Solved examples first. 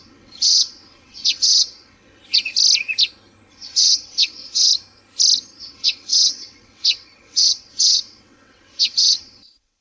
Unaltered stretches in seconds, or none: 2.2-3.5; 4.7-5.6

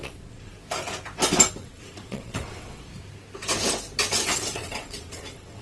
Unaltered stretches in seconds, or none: 0.5-1.6; 2.9-4.3

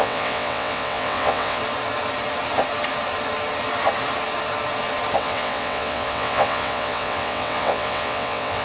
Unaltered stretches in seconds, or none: 1.6-5.2